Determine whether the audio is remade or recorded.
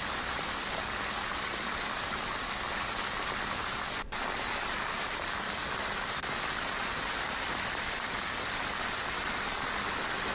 recorded